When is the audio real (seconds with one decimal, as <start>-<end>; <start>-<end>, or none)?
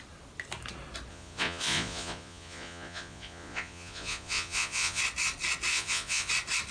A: 0.0-1.1; 5.0-5.7; 6.3-6.7